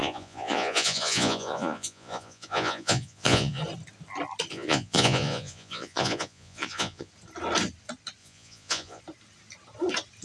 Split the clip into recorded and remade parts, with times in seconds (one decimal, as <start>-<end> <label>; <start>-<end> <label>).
0.0-3.6 remade; 3.6-4.5 recorded; 4.5-7.1 remade; 7.1-8.2 recorded; 8.2-9.0 remade; 9.0-10.2 recorded